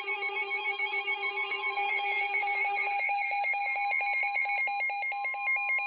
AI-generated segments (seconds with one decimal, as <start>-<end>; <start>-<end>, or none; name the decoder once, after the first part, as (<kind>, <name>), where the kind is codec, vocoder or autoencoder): 0.0-3.8 (codec, DAC)